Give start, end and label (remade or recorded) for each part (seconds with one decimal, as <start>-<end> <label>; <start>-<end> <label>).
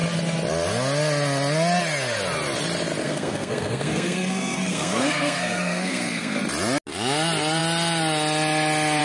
0.0-3.0 recorded; 3.0-6.4 remade; 6.4-9.0 recorded